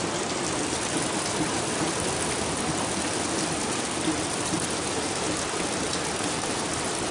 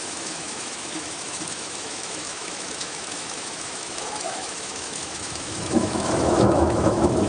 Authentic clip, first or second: first